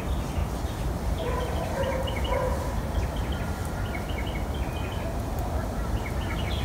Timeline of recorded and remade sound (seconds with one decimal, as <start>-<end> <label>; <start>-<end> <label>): 0.0-3.6 remade; 3.6-6.6 recorded